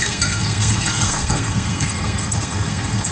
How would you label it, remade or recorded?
remade